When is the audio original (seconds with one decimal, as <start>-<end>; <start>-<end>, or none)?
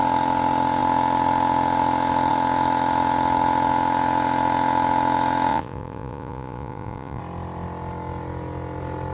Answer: 0.0-5.5; 7.2-9.1